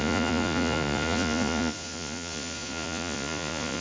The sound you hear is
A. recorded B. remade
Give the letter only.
B